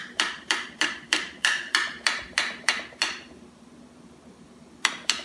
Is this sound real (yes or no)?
no